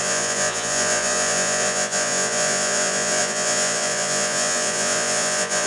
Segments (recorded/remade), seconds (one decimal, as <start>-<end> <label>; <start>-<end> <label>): 0.0-5.7 remade